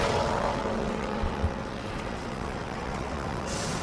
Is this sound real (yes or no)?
no